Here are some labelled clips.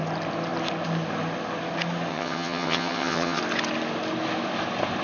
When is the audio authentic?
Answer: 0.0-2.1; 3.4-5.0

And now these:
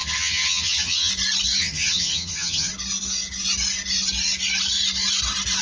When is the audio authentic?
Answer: 1.1-1.6; 2.7-5.6

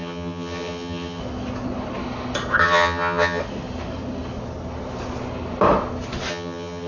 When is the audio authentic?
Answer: 1.2-2.6; 3.4-6.3